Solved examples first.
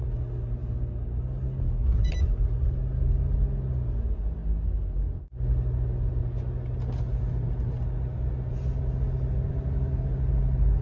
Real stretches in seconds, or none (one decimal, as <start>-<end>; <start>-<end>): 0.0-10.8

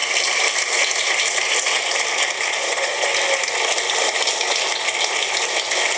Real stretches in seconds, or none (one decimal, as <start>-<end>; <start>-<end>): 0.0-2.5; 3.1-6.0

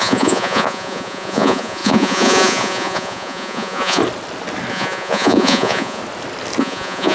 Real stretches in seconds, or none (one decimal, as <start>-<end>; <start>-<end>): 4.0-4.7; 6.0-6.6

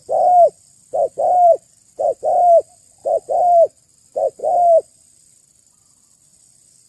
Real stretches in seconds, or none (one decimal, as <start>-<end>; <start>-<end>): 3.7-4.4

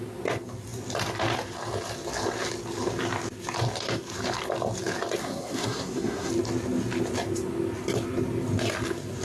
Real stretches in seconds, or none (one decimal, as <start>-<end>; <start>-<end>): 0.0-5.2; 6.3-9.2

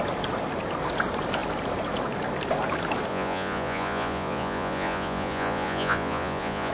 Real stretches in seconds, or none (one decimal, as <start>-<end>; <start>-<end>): 0.0-3.1

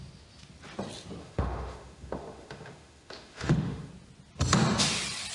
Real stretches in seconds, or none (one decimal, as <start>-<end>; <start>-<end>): 0.0-1.2; 3.9-5.3

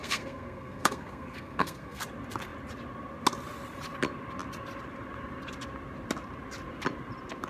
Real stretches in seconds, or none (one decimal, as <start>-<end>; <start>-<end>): 2.0-7.5